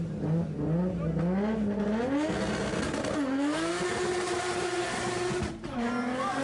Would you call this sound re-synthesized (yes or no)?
no